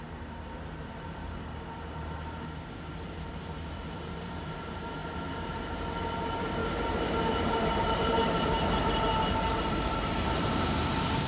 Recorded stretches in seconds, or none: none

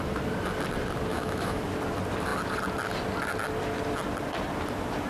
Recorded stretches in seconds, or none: 0.0-1.1; 1.6-5.1

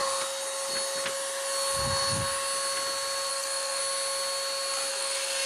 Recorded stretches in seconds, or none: 0.0-3.3; 3.8-4.9

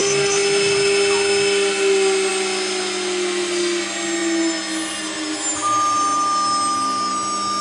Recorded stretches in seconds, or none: 0.0-7.6

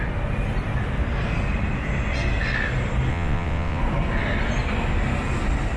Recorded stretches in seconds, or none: 0.0-3.1; 3.8-5.8

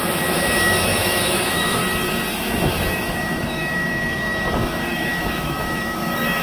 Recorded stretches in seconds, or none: 1.8-2.4

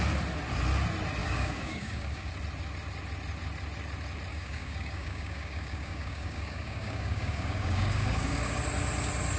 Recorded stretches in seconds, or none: 0.0-1.2; 2.3-4.3; 8.6-9.4

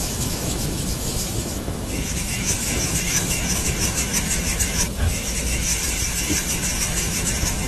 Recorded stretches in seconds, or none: 5.7-6.5